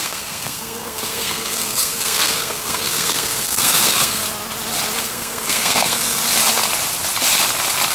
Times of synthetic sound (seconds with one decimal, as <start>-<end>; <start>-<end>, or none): 0.0-4.2; 5.0-6.2